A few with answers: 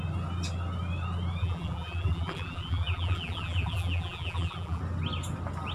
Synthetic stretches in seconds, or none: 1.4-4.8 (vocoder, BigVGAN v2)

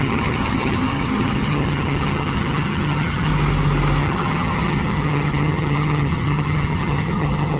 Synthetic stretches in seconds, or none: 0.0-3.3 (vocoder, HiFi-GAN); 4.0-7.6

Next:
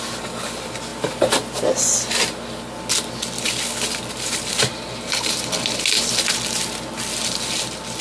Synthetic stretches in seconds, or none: none